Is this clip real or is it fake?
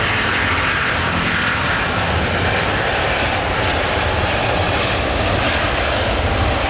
real